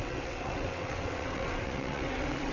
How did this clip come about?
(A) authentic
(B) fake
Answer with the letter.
B